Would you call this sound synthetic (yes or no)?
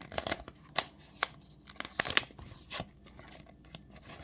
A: no